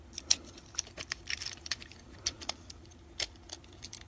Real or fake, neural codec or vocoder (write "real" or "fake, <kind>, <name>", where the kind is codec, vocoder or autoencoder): fake, vocoder, BigVGAN v2